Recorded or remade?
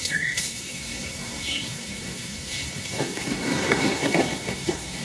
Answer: remade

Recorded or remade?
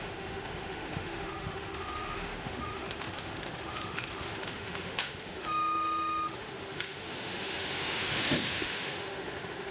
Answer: remade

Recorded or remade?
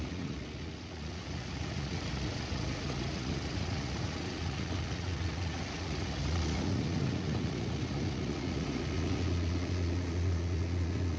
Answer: remade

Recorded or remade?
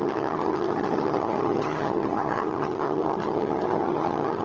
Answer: remade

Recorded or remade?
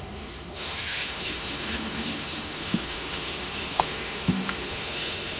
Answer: remade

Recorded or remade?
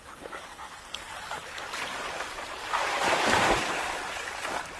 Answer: remade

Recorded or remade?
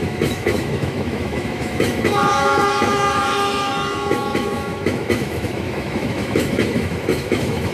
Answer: remade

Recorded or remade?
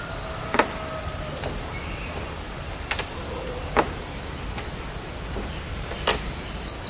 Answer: recorded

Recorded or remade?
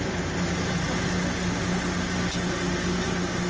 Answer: recorded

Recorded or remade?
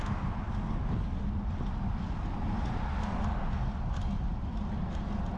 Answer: recorded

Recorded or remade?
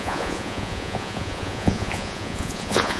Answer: remade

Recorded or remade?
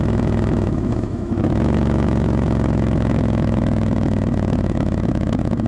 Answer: remade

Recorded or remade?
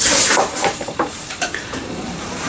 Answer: remade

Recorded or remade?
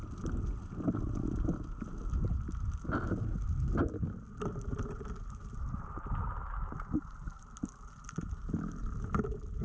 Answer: recorded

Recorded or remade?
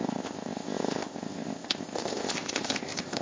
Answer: remade